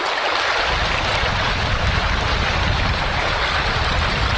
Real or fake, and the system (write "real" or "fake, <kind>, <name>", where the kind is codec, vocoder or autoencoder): real